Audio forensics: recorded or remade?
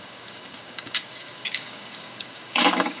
remade